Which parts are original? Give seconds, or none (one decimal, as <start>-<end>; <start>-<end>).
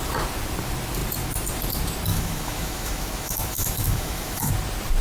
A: 0.0-2.1; 4.5-5.0